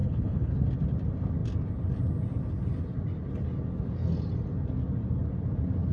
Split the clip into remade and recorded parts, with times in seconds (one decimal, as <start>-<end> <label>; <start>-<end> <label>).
0.0-0.5 remade; 0.5-5.9 recorded